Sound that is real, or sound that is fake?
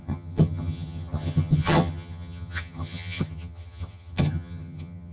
fake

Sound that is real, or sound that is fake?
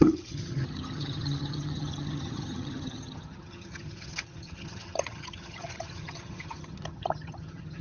fake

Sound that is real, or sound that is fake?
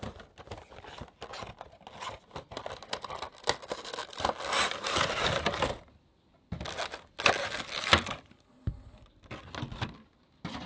real